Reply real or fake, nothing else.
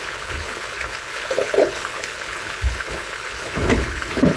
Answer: fake